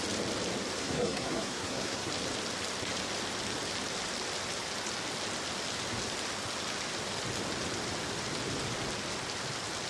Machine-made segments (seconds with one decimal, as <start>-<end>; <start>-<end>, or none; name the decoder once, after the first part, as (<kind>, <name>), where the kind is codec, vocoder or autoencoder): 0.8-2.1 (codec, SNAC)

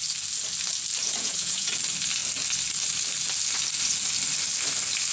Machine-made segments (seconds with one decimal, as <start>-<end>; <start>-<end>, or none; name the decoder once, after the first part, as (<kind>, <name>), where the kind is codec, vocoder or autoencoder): 1.0-1.7 (vocoder, Vocos)

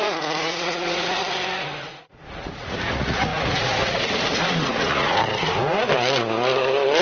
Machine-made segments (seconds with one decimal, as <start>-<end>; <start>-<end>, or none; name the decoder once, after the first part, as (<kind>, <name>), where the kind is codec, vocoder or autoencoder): 0.0-1.2 (vocoder, Vocos); 1.8-5.2

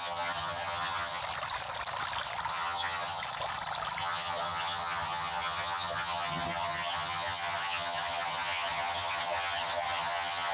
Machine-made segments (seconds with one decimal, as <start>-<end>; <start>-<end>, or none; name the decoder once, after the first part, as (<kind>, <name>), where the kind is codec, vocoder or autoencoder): 0.0-1.2 (vocoder, HiFi-GAN); 2.5-3.2; 4.0-10.5